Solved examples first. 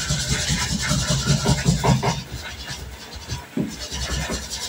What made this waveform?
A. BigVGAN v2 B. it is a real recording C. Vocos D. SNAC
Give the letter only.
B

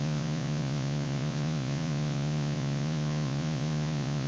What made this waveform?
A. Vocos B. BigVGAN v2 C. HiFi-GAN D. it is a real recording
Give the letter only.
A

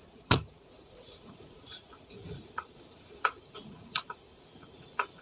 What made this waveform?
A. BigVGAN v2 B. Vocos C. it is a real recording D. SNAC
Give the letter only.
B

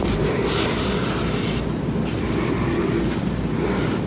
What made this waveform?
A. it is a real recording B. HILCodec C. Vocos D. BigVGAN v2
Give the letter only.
A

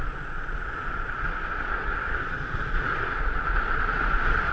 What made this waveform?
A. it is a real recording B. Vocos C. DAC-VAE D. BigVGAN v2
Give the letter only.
B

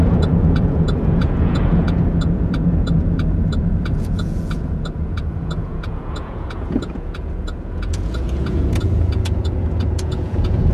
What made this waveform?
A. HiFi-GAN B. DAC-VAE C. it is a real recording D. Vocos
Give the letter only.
D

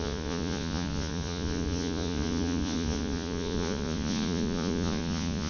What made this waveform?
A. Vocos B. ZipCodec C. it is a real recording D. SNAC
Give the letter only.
A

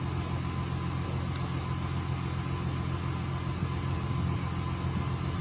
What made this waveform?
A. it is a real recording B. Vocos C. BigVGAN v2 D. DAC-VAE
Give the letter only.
A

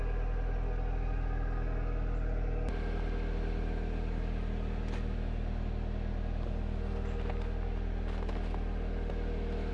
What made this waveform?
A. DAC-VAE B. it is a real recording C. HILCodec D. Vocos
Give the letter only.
B